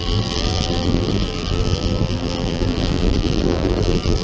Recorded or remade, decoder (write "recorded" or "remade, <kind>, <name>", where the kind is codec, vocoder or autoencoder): remade, vocoder, BigVGAN v2